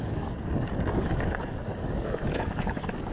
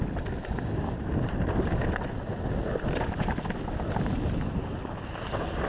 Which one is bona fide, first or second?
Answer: second